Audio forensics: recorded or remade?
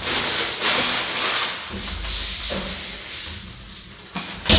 recorded